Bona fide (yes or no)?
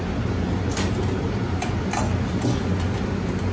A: yes